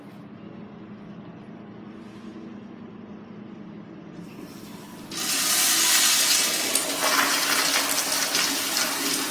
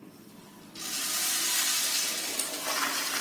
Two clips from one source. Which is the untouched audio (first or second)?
first